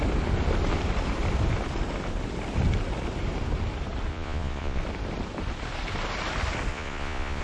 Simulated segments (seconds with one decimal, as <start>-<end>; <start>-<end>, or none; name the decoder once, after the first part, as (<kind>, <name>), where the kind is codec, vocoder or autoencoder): 4.1-4.8 (vocoder, Vocos); 6.7-7.4